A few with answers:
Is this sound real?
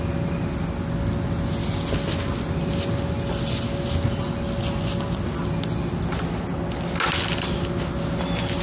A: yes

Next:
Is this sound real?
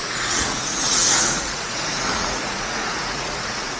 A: no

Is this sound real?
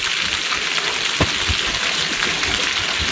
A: yes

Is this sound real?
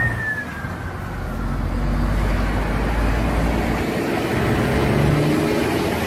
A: yes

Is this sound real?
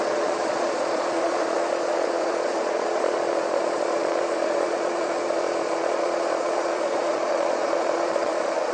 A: no